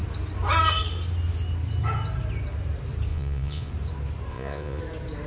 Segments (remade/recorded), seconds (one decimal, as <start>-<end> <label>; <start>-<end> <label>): 0.0-3.1 recorded; 3.1-3.7 remade; 3.7-4.3 recorded; 4.3-4.8 remade; 4.8-5.3 recorded